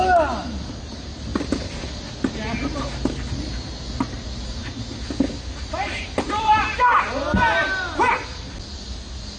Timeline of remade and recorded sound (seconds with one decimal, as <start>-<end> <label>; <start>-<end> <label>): 0.0-9.4 recorded